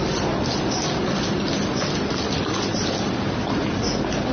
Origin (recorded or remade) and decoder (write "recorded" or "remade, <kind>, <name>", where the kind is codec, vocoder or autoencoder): recorded